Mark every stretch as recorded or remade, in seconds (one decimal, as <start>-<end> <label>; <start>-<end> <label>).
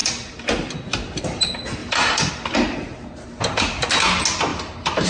0.0-1.8 recorded; 1.8-2.3 remade; 2.3-4.5 recorded; 4.5-5.1 remade